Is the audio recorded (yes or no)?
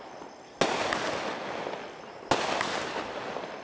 yes